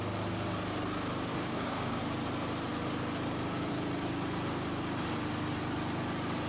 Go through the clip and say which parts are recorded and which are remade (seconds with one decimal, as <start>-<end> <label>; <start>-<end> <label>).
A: 0.0-1.3 recorded; 1.3-2.0 remade; 2.0-6.5 recorded